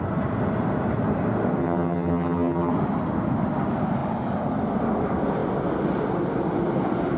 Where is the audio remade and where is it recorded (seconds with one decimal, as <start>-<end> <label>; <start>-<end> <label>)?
0.0-1.6 recorded; 1.6-2.7 remade; 2.7-7.2 recorded